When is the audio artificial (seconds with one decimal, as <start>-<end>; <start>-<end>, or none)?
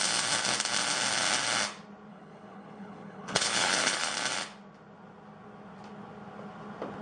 2.1-4.1